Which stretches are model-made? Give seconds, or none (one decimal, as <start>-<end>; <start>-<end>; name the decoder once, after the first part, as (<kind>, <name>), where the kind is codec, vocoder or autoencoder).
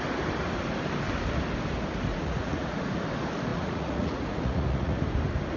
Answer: 2.1-3.0 (vocoder, Vocos); 3.5-5.0